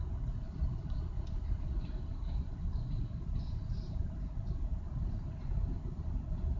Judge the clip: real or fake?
real